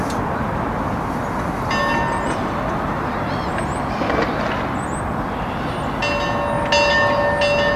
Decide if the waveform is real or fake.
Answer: real